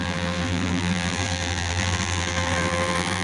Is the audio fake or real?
fake